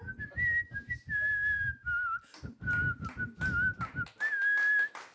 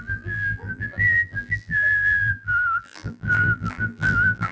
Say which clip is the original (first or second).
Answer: first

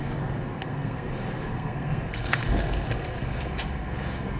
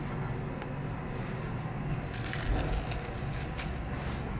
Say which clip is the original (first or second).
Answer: second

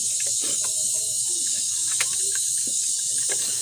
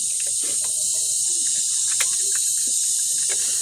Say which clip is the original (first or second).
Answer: second